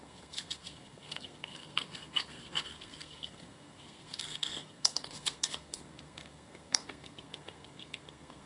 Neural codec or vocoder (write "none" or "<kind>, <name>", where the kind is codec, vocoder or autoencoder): codec, SNAC